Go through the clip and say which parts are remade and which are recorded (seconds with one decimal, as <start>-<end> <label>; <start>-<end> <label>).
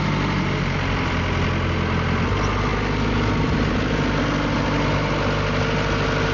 0.0-6.3 recorded